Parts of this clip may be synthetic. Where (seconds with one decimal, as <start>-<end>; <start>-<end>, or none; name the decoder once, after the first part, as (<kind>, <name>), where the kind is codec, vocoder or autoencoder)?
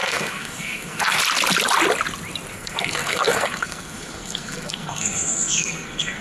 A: 0.0-1.2 (codec, SNAC); 2.5-6.2